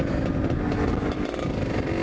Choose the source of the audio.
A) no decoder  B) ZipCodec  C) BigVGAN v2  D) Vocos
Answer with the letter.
A